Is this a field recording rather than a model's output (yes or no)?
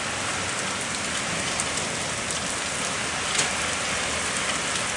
yes